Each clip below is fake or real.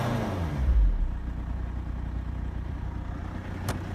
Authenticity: fake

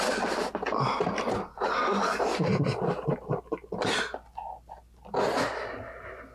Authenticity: real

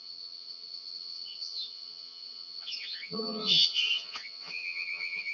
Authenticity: fake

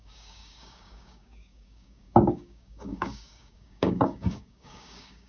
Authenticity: fake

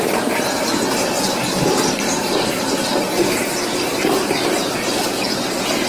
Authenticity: fake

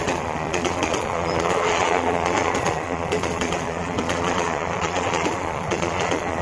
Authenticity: fake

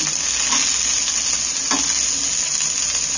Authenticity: real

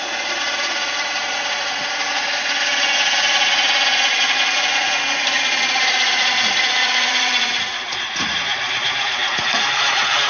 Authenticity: fake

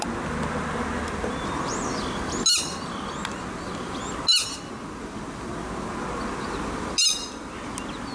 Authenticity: real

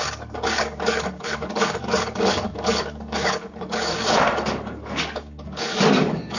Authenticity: fake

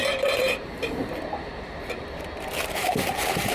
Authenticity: fake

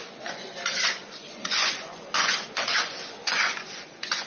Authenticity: fake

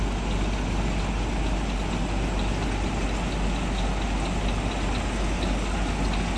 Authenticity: real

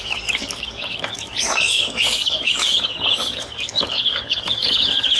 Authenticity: fake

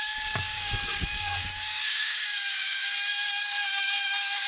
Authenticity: fake